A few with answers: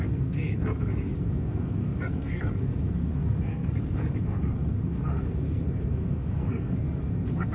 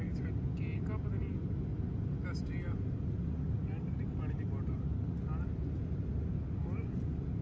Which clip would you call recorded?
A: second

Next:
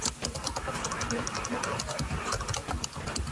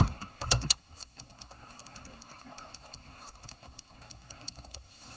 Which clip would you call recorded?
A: first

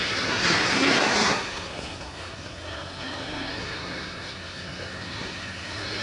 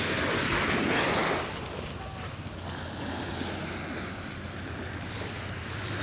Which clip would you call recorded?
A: second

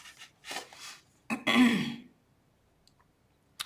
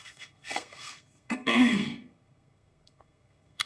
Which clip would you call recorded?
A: first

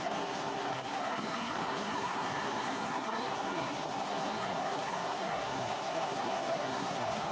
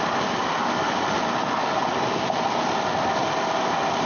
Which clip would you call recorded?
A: second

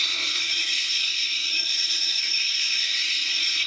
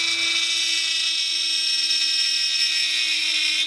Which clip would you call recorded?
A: second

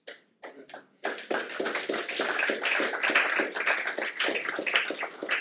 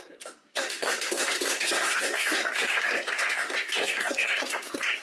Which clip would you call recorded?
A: first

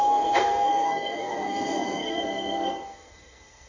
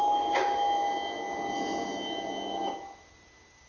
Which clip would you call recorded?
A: second